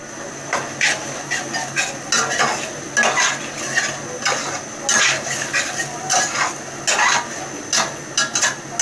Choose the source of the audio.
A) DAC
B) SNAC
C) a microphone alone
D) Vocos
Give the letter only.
C